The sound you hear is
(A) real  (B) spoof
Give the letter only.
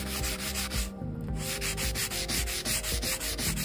B